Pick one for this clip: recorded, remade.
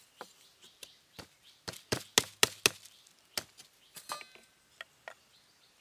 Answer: recorded